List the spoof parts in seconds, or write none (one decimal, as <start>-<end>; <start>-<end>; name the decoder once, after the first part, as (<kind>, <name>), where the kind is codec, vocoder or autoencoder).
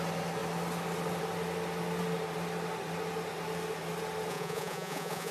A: 4.3-5.3 (vocoder, Vocos)